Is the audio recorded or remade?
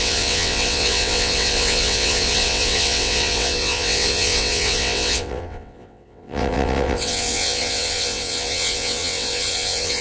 remade